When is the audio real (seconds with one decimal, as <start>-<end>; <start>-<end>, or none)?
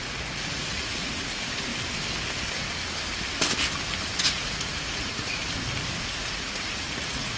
1.7-4.2; 5.4-6.0